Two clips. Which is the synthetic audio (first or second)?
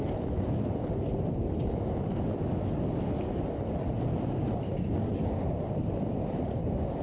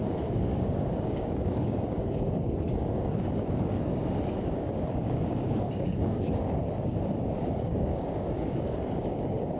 second